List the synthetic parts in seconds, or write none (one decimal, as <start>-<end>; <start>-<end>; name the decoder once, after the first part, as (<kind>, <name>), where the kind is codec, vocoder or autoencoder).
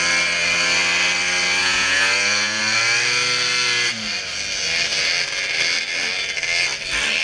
1.6-2.6 (vocoder, Vocos)